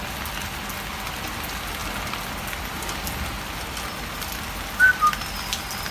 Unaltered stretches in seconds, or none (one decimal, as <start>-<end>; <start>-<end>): 0.0-5.9

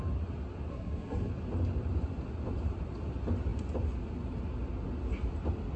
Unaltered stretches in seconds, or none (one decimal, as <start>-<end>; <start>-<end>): 0.0-0.7; 1.3-5.8

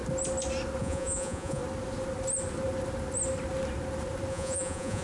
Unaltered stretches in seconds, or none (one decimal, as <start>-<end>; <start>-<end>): 0.0-0.8; 1.6-4.3

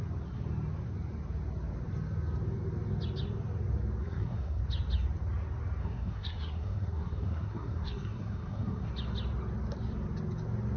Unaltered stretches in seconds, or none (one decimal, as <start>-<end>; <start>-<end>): 0.0-4.0; 4.6-5.8; 8.9-10.8

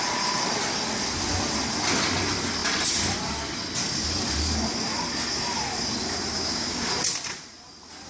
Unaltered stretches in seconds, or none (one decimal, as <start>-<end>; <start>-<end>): 0.0-6.3; 6.9-8.1

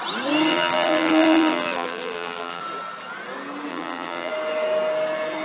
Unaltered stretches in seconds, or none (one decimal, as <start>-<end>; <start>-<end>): 0.0-0.5; 2.6-3.7; 4.3-5.4

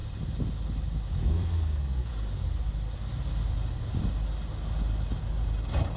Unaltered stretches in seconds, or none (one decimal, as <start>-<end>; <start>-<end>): 0.0-1.2; 2.1-6.0